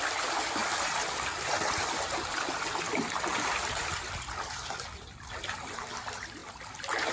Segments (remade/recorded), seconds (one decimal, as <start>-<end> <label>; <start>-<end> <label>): 0.0-0.6 remade; 0.6-2.3 recorded; 2.3-3.3 remade; 3.3-5.3 recorded; 5.3-7.1 remade